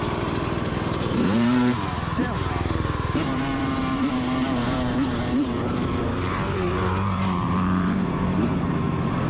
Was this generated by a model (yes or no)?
yes